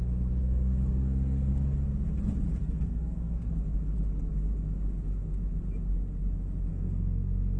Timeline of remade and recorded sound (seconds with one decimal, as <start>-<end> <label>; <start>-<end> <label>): 0.0-0.4 recorded; 0.4-1.5 remade; 1.5-2.6 recorded; 2.6-3.5 remade; 3.5-6.7 recorded; 6.7-7.6 remade